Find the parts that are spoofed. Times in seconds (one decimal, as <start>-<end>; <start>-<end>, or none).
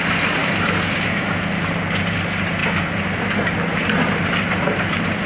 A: 0.4-1.4